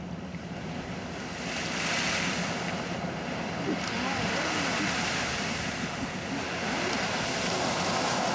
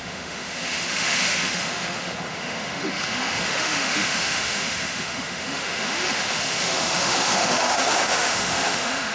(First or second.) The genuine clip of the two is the first